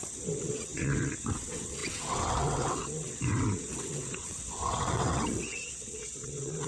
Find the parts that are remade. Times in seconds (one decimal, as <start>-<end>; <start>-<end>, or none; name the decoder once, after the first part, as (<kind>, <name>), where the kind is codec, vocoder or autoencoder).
0.0-6.7 (vocoder, WaveNeXt)

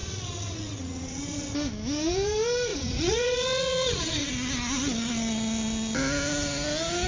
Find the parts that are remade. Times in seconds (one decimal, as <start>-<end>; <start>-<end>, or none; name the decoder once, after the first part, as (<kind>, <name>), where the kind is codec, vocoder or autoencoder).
0.0-1.5 (vocoder, WaveNeXt); 2.7-4.3

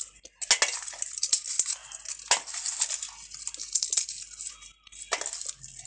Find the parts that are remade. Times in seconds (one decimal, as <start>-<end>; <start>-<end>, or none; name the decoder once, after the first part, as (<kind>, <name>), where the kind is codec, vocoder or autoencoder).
none

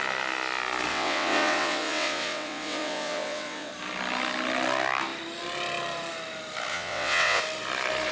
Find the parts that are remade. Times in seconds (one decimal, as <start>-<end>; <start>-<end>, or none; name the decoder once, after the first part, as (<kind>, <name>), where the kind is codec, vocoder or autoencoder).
0.9-3.7 (vocoder, WaveNeXt); 6.7-7.4

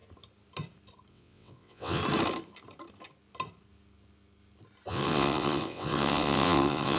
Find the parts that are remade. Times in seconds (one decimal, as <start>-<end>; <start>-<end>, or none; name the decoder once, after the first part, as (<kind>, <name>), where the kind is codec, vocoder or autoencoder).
1.1-2.0 (vocoder, WaveNeXt); 4.9-7.0

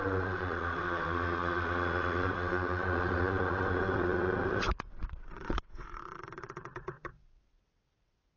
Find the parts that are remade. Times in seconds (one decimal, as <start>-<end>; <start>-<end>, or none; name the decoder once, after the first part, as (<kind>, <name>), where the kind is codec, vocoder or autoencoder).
0.0-8.4 (vocoder, WaveNeXt)

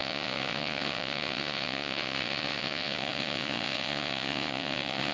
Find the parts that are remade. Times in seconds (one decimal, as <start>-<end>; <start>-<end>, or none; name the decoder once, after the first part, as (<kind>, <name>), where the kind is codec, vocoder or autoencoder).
0.0-5.1 (vocoder, WaveNeXt)